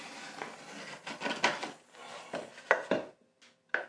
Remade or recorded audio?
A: recorded